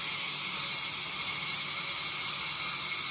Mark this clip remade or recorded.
recorded